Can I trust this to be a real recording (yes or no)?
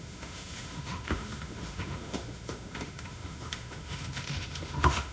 no